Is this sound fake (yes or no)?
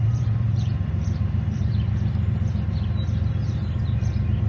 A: yes